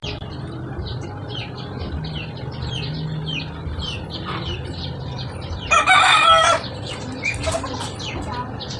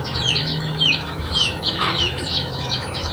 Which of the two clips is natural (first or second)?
first